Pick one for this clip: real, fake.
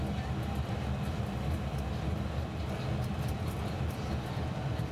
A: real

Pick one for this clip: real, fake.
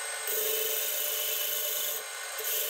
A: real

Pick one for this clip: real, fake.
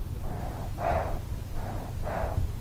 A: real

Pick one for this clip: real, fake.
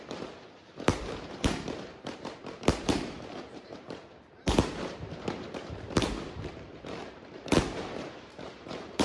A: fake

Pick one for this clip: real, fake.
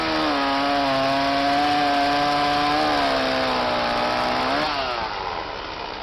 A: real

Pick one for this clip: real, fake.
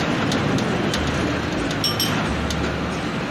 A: real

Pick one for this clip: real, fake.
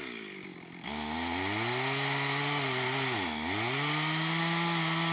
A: real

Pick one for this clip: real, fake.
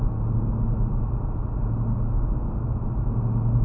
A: real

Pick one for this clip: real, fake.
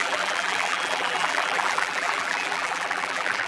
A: fake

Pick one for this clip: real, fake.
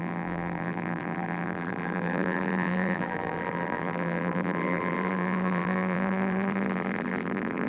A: fake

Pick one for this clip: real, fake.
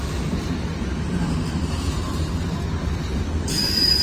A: fake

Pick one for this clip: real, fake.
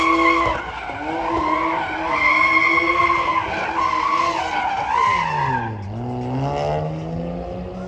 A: real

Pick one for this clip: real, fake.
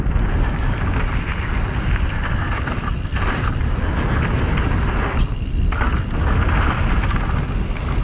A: real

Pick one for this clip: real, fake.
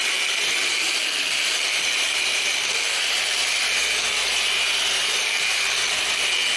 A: fake